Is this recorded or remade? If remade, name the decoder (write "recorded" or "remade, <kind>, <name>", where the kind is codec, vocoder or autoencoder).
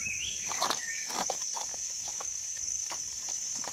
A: remade, codec, DAC